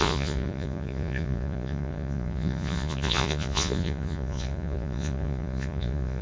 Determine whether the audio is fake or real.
fake